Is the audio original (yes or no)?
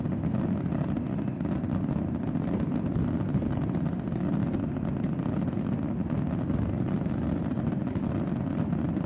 no